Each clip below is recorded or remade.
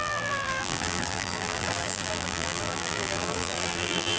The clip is remade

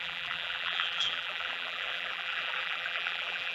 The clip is remade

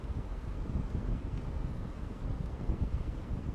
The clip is remade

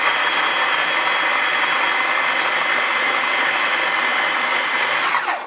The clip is recorded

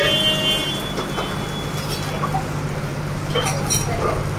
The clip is recorded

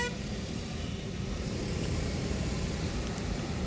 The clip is remade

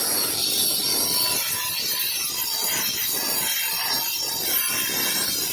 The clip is recorded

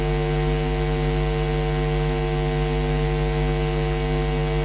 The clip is recorded